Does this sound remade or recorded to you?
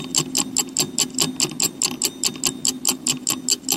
recorded